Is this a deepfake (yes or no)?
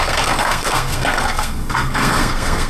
yes